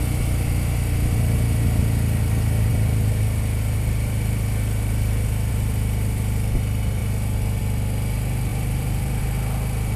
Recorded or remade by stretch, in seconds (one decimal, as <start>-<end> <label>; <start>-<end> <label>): 0.0-8.5 recorded; 8.5-9.2 remade; 9.2-10.0 recorded